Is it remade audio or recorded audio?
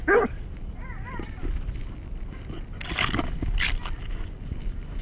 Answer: recorded